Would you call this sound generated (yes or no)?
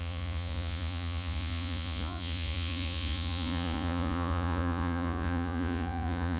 yes